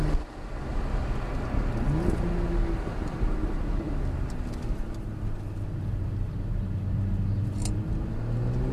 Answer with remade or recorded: recorded